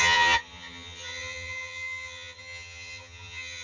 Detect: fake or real fake